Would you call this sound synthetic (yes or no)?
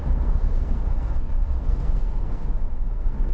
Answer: yes